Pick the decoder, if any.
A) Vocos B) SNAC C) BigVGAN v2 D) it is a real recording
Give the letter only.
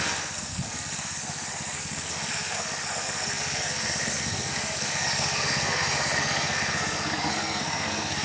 B